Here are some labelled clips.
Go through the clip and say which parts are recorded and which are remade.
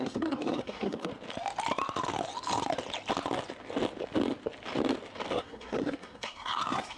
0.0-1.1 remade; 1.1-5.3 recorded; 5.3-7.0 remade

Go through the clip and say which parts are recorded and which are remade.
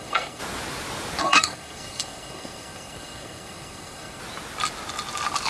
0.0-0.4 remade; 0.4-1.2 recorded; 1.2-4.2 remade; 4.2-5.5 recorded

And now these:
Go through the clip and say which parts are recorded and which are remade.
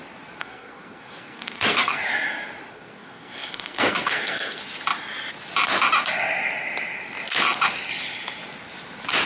0.0-0.4 recorded; 0.4-2.0 remade; 2.0-2.7 recorded; 2.7-4.6 remade; 4.6-9.3 recorded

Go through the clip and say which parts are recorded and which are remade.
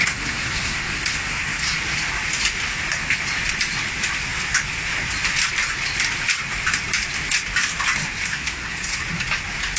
0.0-1.8 remade; 1.8-8.3 recorded; 8.3-9.0 remade; 9.0-9.8 recorded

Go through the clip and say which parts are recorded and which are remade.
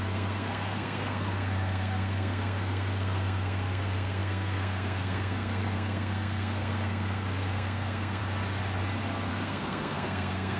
0.0-8.2 remade; 8.2-9.3 recorded; 9.3-10.6 remade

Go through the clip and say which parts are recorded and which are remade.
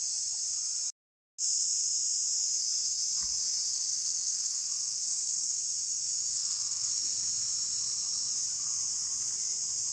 0.0-3.7 recorded; 3.7-5.6 remade; 5.6-6.3 recorded; 6.3-6.9 remade; 6.9-9.9 recorded